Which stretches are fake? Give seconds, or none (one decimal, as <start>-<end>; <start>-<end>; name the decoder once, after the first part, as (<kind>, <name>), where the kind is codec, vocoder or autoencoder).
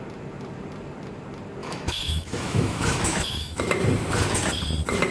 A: 1.6-3.6 (autoencoder, DAC-VAE)